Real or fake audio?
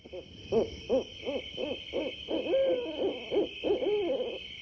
real